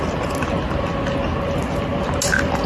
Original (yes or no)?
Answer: yes